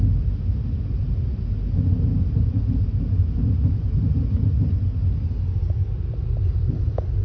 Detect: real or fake real